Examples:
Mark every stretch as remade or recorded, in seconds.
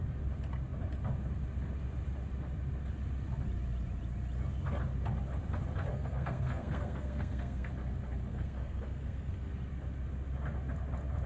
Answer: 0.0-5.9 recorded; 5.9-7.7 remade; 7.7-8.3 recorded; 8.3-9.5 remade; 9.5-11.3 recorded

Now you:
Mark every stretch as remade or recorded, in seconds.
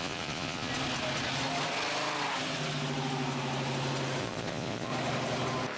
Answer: 0.0-0.7 remade; 0.7-4.2 recorded; 4.2-4.9 remade; 4.9-5.8 recorded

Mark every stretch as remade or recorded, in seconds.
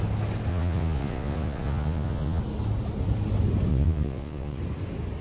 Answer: 0.0-0.5 recorded; 0.5-2.4 remade; 2.4-3.7 recorded; 3.7-4.6 remade; 4.6-5.2 recorded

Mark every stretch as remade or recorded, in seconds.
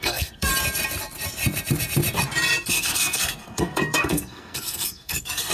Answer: 0.0-0.5 remade; 0.5-2.7 recorded; 2.7-5.5 remade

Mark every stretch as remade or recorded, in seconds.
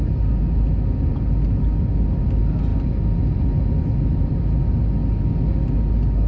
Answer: 0.0-6.3 recorded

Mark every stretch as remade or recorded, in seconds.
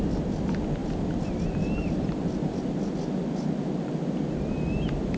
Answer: 0.0-1.8 recorded; 1.8-2.7 remade; 2.7-5.2 recorded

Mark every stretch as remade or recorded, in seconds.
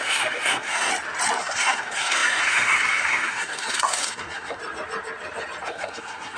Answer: 0.0-0.9 remade; 0.9-1.4 recorded; 1.4-4.6 remade; 4.6-5.6 recorded; 5.6-6.4 remade